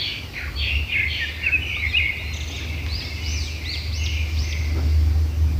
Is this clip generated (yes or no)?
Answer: no